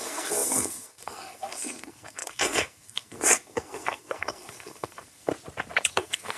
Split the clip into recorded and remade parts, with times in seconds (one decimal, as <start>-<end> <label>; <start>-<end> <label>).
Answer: 0.0-5.3 remade; 5.3-5.9 recorded; 5.9-6.4 remade